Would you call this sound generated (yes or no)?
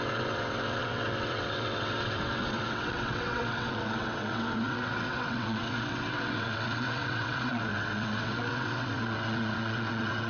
yes